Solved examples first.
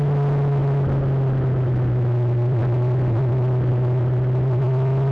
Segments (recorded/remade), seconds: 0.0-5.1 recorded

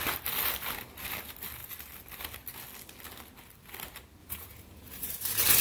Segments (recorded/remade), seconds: 0.0-4.2 recorded; 4.2-5.1 remade; 5.1-5.6 recorded

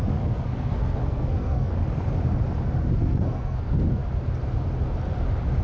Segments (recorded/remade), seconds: 0.0-1.7 remade; 1.7-3.0 recorded; 3.0-4.0 remade; 4.0-5.6 recorded

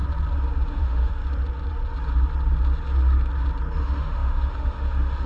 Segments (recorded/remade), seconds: 0.0-0.7 recorded; 0.7-1.2 remade; 1.2-3.8 recorded; 3.8-5.3 remade

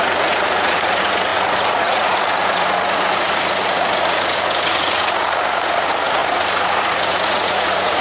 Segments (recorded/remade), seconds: 0.0-8.0 remade

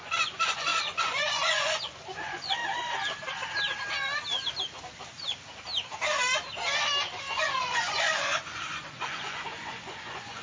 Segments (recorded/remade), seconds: 0.0-2.6 remade; 2.6-7.2 recorded; 7.2-10.4 remade